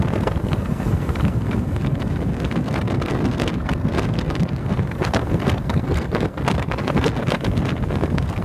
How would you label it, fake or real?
fake